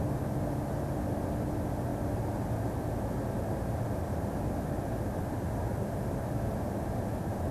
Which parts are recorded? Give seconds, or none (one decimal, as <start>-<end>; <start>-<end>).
0.0-7.5